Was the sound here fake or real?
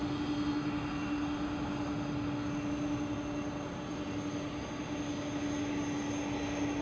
real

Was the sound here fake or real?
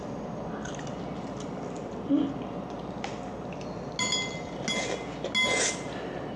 real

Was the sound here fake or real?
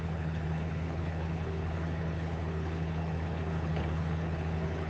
fake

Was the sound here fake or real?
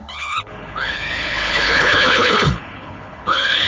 fake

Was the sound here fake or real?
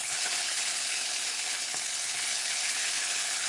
fake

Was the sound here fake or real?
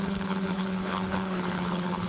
fake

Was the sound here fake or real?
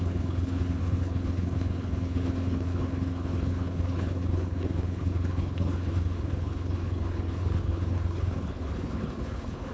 fake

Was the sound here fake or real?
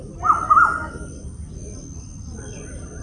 real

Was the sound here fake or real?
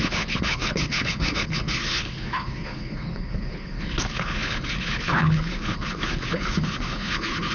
fake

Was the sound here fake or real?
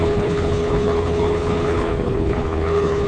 fake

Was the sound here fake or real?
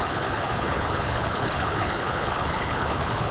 fake